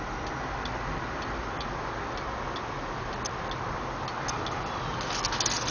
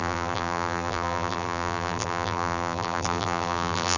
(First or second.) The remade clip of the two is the second